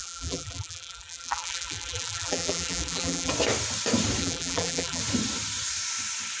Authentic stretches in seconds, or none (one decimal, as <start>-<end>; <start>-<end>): 3.3-4.2; 5.0-6.4